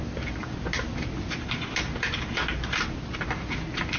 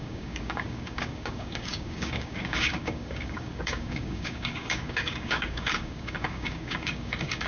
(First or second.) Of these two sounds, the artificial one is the second